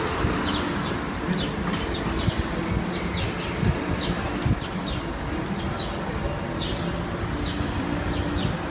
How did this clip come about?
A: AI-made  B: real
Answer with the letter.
B